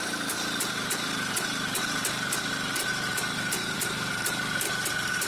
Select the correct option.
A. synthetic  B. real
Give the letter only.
A